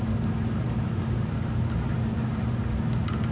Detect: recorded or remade recorded